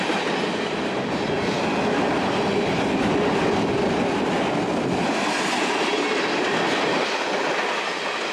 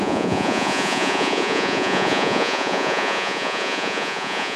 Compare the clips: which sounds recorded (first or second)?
first